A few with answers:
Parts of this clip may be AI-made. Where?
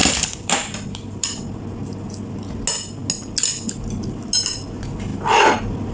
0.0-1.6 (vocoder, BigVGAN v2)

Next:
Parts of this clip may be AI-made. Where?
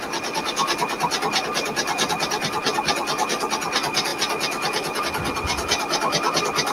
none